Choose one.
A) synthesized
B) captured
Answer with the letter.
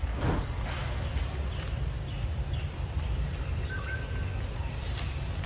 B